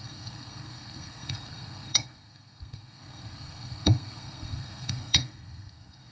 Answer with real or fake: fake